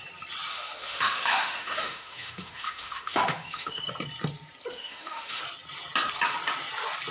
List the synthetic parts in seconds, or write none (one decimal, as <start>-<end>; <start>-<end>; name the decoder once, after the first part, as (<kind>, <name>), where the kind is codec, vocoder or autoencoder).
0.5-3.8 (autoencoder, DAC-VAE); 4.7-5.4